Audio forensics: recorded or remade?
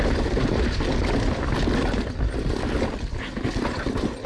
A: recorded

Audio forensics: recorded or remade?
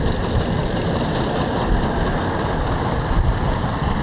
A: recorded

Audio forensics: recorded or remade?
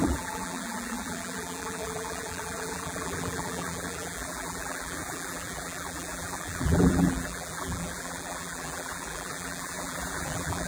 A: remade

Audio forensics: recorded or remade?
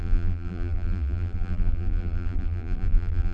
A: remade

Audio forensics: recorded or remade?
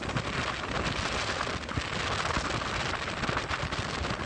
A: recorded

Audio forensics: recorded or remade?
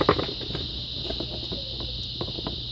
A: recorded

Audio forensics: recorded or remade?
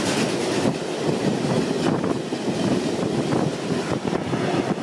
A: recorded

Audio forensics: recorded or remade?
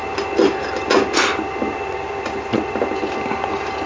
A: recorded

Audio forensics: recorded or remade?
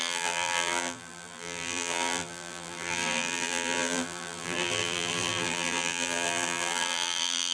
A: remade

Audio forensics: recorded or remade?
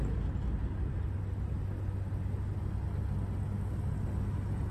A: recorded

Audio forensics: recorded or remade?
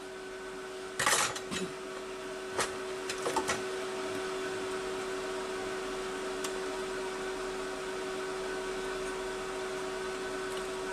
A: recorded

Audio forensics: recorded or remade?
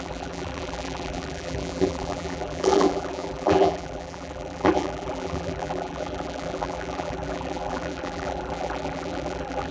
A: remade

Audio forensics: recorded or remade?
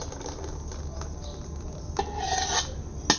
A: recorded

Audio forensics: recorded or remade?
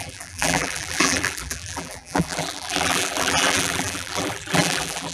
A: remade